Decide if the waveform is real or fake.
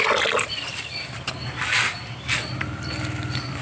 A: real